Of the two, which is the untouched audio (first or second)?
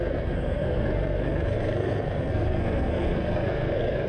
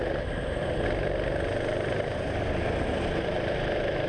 second